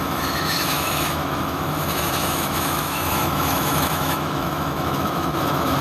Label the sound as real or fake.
fake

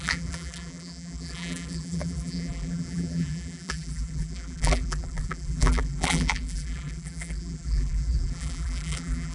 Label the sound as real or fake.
fake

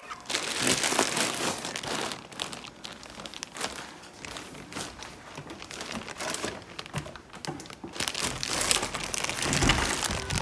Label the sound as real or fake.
real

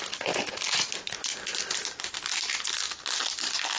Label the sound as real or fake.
real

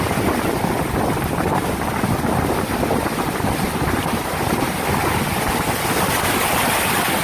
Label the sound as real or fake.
real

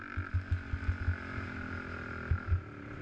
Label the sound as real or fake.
real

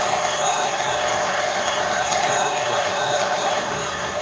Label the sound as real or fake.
fake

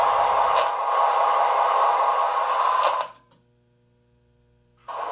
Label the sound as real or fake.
real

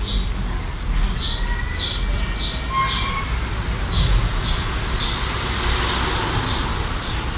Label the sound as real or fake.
real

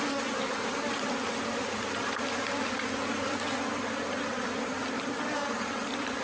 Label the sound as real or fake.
real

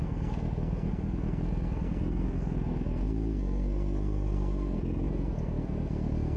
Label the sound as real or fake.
fake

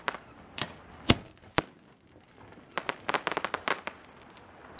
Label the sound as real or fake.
real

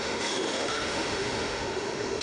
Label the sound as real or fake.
fake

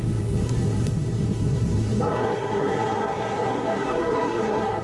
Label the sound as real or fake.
fake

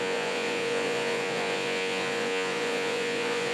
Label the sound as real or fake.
fake